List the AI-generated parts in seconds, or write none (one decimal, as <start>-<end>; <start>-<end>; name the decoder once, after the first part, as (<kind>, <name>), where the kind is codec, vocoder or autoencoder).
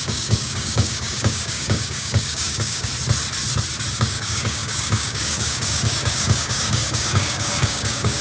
0.0-2.9 (codec, DAC); 3.9-8.2